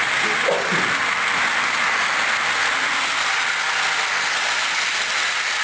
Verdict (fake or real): real